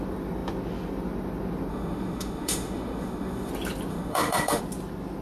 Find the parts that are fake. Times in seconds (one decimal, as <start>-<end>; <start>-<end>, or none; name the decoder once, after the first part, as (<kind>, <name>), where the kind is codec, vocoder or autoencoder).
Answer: 1.7-3.5 (autoencoder, DAC-VAE); 3.9-4.6